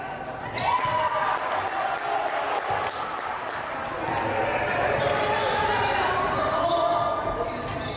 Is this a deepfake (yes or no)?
no